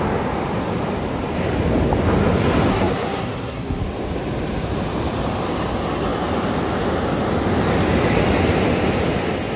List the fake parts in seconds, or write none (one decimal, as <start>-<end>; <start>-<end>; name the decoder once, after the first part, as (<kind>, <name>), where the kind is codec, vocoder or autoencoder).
2.7-3.8 (codec, SNAC)